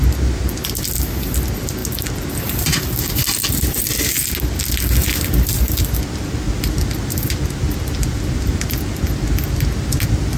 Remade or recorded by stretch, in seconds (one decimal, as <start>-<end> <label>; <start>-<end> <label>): 0.0-10.4 recorded